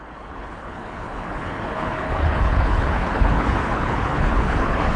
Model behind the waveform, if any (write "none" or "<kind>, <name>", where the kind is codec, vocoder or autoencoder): codec, HILCodec